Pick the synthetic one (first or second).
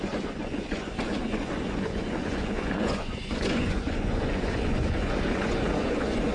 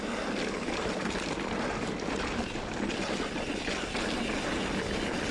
first